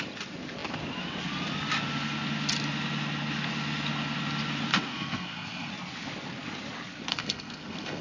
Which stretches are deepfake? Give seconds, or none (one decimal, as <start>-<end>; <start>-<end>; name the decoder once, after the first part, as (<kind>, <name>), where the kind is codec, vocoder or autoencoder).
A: 4.7-5.7 (codec, SNAC); 7.1-8.0